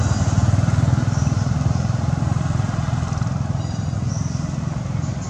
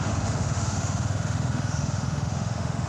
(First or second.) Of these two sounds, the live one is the first